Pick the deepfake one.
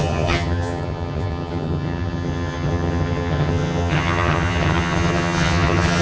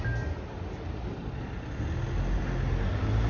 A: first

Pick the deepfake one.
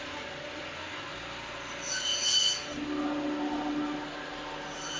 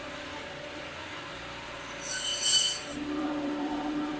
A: second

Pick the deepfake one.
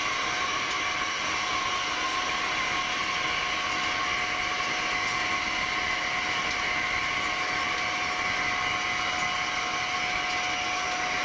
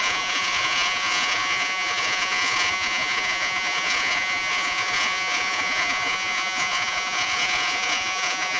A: second